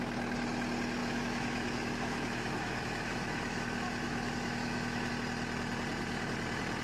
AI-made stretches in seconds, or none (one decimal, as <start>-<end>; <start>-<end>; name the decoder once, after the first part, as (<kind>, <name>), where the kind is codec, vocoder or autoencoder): 1.0-5.1 (autoencoder, DAC-VAE)

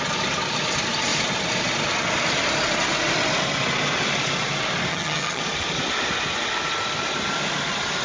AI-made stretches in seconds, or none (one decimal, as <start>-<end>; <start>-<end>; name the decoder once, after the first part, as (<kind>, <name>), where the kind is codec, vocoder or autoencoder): 4.9-5.4 (vocoder, HiFi-GAN)